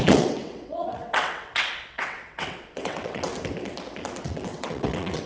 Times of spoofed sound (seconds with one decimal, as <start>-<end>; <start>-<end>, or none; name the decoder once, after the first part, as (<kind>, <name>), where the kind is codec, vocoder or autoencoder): 0.0-3.3 (vocoder, WaveNeXt); 4.2-5.3